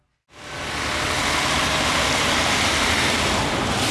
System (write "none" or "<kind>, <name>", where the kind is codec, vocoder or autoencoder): none